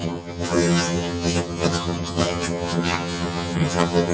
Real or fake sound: fake